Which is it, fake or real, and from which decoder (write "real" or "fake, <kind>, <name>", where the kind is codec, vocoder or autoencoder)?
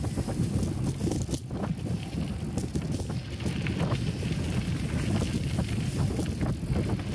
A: real